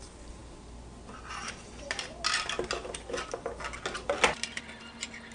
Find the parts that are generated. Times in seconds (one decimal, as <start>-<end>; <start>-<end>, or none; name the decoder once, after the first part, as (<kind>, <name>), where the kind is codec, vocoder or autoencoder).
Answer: none

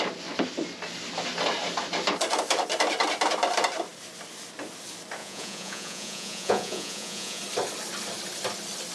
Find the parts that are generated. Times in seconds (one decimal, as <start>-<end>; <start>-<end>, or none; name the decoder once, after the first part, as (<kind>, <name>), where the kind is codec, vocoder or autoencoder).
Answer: 5.2-7.4 (vocoder, Vocos)

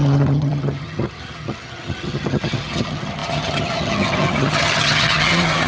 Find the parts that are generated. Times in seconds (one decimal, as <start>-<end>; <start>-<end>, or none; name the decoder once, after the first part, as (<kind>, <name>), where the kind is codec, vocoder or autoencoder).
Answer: 0.0-5.7 (vocoder, HiFi-GAN)

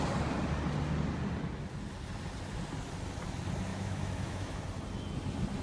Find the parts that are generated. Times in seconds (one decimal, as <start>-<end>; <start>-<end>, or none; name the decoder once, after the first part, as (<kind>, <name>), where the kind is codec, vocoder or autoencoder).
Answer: 3.7-4.6 (autoencoder, DAC-VAE)

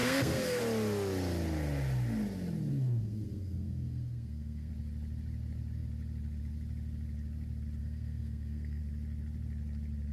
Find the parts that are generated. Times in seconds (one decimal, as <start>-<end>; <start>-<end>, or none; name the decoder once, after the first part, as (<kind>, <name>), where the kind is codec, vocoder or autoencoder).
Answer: 0.0-0.6 (codec, SNAC); 2.7-4.7; 7.8-8.8

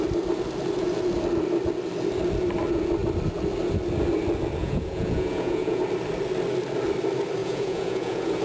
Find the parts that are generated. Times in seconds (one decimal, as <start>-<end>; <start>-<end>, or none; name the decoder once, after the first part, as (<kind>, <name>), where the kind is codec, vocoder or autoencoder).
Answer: 4.6-5.8 (vocoder, Vocos); 7.4-8.4

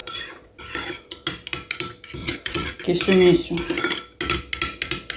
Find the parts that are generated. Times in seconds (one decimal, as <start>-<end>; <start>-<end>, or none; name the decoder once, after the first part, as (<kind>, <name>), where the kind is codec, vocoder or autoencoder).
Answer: 0.0-0.6 (vocoder, Vocos); 2.2-2.8

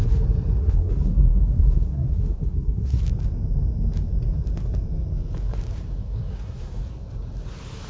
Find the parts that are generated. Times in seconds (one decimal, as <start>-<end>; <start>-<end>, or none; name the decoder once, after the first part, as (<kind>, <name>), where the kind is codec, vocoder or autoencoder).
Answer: 0.6-3.0 (codec, SNAC); 6.0-6.8